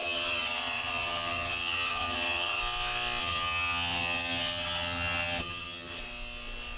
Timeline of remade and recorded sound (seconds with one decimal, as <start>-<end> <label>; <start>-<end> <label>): 0.0-2.6 remade; 2.6-3.2 recorded; 3.2-6.0 remade; 6.0-6.8 recorded